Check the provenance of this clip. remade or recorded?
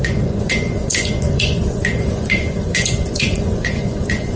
remade